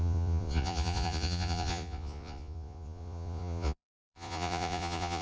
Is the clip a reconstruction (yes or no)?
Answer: yes